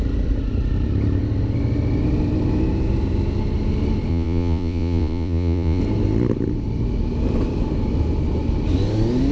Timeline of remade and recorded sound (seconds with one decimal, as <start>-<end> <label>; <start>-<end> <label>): 0.0-4.1 recorded; 4.1-5.8 remade; 5.8-9.3 recorded